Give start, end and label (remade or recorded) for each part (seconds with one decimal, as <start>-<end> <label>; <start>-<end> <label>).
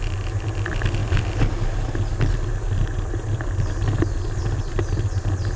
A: 0.0-5.6 recorded